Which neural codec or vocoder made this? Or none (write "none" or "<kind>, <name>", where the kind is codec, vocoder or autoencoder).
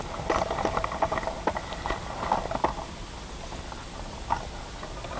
none